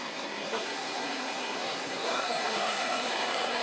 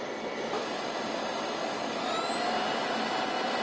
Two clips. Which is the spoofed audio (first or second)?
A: first